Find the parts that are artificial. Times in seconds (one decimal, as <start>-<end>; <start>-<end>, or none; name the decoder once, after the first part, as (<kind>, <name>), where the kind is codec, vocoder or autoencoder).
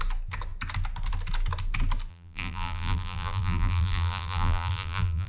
2.1-5.3 (vocoder, BigVGAN v2)